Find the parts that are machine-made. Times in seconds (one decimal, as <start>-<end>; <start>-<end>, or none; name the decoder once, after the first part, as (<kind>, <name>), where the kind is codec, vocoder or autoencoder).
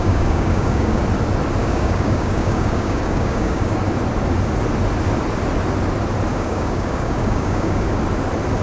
0.0-1.0 (codec, DAC); 1.6-3.8; 6.3-8.0